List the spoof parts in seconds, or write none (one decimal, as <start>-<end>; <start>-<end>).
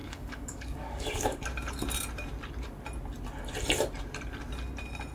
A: 0.0-1.4